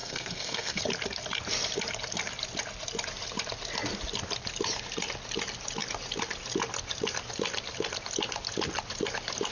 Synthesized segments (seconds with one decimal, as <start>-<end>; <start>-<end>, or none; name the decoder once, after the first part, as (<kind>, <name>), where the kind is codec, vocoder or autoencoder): 0.0-0.8 (codec, SNAC)